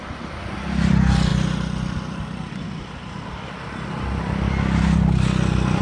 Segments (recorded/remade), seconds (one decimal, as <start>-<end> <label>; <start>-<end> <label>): 0.0-5.8 recorded